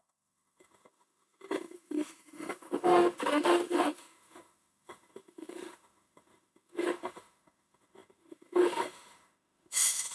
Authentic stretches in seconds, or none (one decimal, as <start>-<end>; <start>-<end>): none